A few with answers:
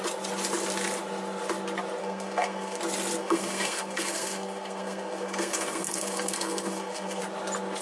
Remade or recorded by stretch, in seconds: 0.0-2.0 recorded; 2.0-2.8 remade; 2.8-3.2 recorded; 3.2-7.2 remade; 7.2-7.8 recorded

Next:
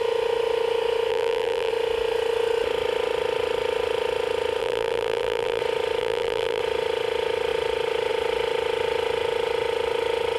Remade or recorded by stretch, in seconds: 0.0-1.1 recorded; 1.1-1.7 remade; 1.7-4.6 recorded; 4.6-5.6 remade; 5.6-6.0 recorded; 6.0-6.6 remade; 6.6-10.4 recorded

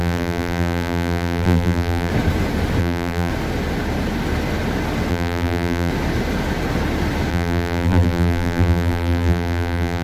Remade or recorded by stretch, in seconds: 0.0-2.1 remade; 2.1-2.8 recorded; 2.8-3.3 remade; 3.3-5.1 recorded; 5.1-5.9 remade; 5.9-7.3 recorded; 7.3-10.0 remade

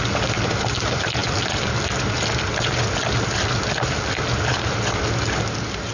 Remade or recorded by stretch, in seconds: 0.0-5.9 recorded

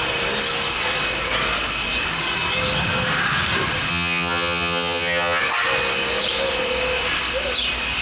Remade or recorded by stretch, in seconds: 0.0-3.9 recorded; 3.9-5.4 remade; 5.4-8.0 recorded